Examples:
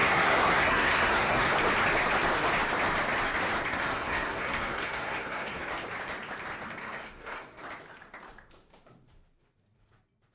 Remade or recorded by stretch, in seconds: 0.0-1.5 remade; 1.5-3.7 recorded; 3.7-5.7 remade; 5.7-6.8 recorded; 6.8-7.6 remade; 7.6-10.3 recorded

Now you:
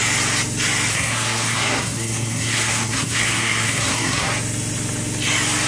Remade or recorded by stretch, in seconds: 0.0-0.9 recorded; 0.9-4.3 remade; 4.3-5.7 recorded